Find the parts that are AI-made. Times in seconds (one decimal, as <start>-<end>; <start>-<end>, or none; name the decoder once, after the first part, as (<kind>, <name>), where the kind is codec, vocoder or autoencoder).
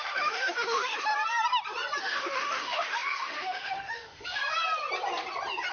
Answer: 0.0-1.1 (autoencoder, DAC-VAE); 2.0-4.4